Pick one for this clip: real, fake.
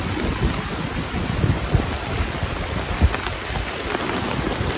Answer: real